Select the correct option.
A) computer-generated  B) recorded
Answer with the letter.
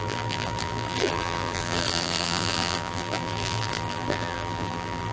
A